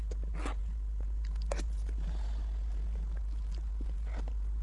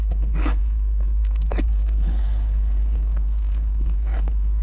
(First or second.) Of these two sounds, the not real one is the second